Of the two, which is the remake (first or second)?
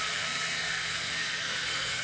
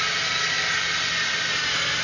first